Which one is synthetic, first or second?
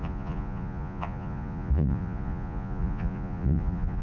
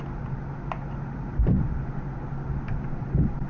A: first